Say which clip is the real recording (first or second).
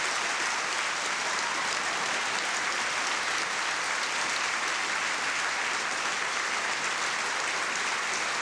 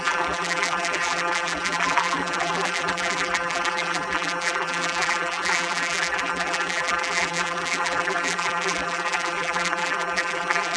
first